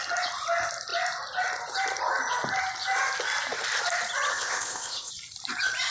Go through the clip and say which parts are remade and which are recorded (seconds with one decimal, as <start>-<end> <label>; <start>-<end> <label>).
0.0-4.3 recorded; 4.3-5.1 remade; 5.1-5.9 recorded